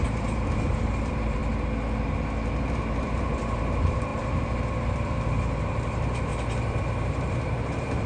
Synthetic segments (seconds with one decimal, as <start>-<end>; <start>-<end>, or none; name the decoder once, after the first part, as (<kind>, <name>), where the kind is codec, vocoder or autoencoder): 0.0-1.4 (vocoder, BigVGAN v2); 2.6-6.3; 6.8-8.1